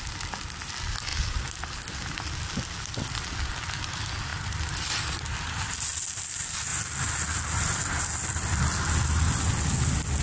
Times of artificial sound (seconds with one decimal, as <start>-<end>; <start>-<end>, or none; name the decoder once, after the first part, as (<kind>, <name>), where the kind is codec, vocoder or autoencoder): 4.3-5.5 (vocoder, BigVGAN v2)